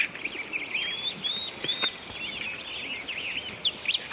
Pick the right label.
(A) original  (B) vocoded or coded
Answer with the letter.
A